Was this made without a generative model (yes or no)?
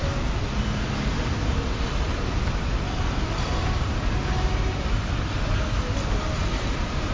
no